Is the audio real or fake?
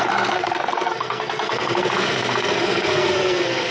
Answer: fake